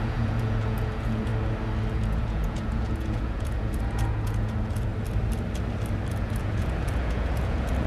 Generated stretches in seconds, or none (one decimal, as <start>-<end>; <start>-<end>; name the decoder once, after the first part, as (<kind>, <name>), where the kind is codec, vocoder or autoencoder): 0.0-1.3 (vocoder, Vocos); 1.9-4.9; 6.1-7.9